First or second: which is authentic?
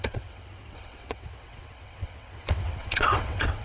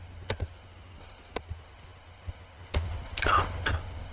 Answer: second